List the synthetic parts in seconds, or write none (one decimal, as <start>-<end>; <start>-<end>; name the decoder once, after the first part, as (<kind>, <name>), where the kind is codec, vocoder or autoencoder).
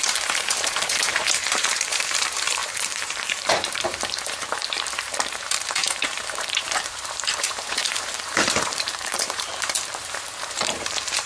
0.0-9.5 (vocoder, BigVGAN v2); 10.0-11.3